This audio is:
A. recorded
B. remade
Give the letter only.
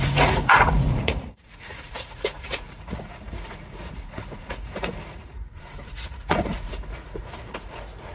B